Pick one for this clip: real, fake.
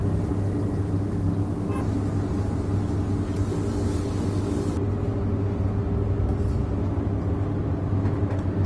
real